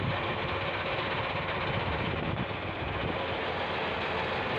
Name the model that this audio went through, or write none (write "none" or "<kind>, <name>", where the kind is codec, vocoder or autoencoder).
none